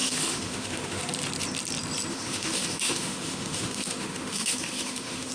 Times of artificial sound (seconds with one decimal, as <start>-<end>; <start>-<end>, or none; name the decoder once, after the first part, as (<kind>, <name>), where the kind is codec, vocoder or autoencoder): 0.0-1.0 (autoencoder, DAC-VAE); 2.1-5.3